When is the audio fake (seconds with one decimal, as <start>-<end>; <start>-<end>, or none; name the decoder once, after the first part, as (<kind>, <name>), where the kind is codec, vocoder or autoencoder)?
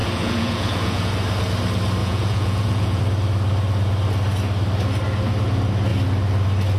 0.0-1.1 (vocoder, Vocos); 2.0-3.0